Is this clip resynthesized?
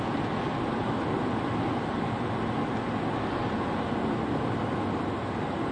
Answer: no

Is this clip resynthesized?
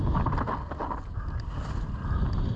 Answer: no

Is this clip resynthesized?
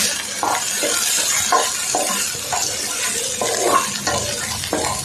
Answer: no